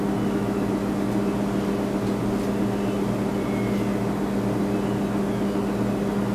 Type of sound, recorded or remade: recorded